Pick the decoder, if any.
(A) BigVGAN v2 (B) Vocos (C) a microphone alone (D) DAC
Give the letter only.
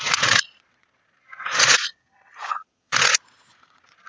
B